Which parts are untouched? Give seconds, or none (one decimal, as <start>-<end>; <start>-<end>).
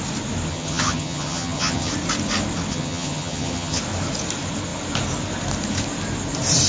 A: 0.0-0.5; 1.9-2.7; 3.8-6.7